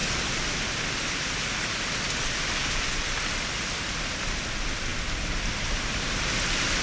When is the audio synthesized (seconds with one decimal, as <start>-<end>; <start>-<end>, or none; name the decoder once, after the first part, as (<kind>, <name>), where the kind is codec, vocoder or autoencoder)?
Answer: none